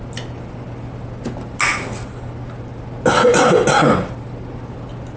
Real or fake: real